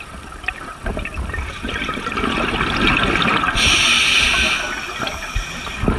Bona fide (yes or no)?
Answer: yes